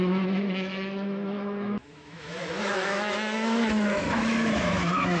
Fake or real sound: fake